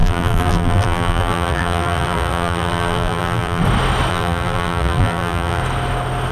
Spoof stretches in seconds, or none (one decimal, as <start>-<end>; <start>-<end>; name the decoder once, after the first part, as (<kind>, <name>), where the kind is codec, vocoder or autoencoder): 0.0-3.6 (vocoder, BigVGAN v2); 4.1-5.6